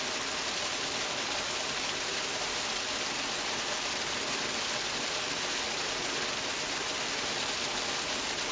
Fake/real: real